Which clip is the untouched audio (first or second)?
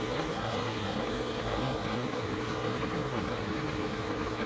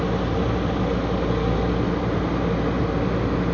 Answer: second